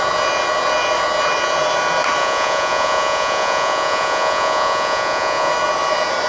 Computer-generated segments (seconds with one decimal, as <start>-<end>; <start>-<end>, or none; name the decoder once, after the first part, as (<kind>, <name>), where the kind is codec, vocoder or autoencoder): 2.2-5.5 (vocoder, Vocos)